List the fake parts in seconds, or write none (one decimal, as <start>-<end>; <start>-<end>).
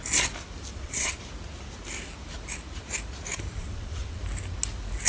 0.7-1.2; 3.6-4.2